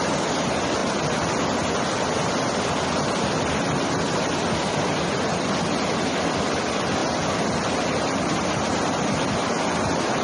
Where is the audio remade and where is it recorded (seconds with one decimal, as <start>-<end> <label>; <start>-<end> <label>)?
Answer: 0.0-10.2 recorded